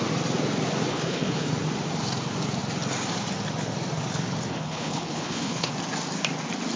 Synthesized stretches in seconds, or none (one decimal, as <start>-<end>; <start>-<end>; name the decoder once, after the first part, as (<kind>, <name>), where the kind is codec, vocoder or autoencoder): 0.9-1.5 (codec, HILCodec); 4.5-5.7